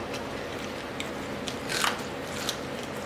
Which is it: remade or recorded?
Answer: recorded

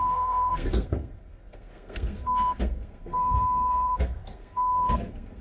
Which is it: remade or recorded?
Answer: remade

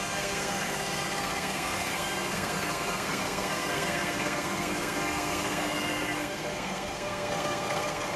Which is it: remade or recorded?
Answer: remade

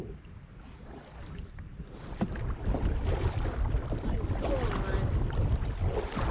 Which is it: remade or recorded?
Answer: recorded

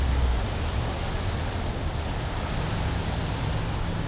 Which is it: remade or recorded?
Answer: recorded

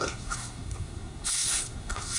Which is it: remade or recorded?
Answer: remade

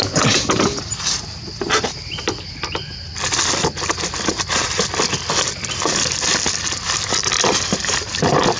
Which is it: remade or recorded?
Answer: recorded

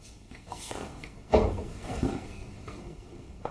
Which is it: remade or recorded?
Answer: remade